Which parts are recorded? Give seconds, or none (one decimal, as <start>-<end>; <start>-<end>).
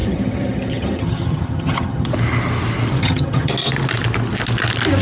2.1-3.0; 3.5-5.0